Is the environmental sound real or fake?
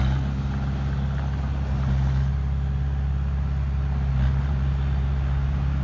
real